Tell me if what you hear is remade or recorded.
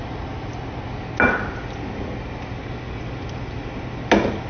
recorded